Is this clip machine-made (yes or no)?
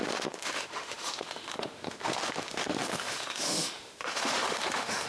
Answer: yes